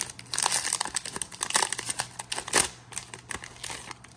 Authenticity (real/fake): real